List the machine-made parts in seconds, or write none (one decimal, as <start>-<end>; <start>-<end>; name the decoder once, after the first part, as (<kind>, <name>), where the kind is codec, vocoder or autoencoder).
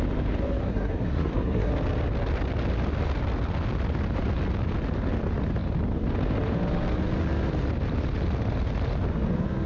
0.6-1.7 (codec, SNAC)